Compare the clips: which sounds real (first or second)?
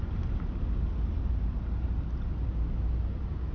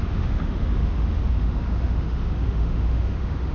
first